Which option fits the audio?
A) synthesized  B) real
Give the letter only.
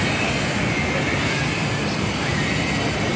A